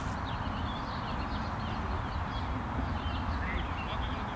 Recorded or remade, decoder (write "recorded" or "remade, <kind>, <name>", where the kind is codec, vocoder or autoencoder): recorded